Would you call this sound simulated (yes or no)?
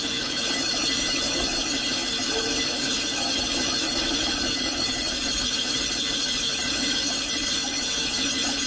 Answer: yes